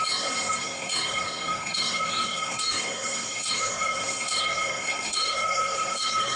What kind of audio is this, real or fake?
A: fake